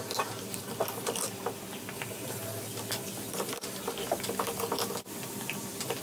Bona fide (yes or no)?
yes